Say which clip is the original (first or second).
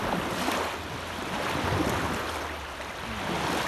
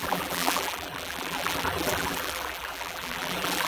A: first